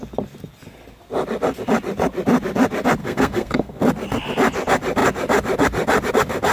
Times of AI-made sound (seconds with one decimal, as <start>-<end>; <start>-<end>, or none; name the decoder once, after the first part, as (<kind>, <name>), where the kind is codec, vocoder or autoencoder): 3.0-3.8 (codec, SNAC)